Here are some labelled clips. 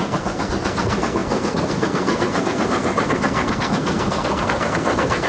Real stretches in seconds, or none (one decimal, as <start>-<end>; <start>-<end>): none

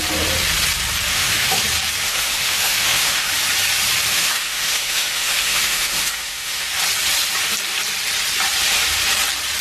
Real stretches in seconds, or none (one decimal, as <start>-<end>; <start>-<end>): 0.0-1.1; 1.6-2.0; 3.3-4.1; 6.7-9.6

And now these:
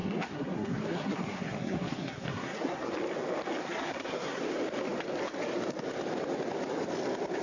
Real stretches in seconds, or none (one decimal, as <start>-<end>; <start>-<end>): 2.9-3.6; 4.4-7.4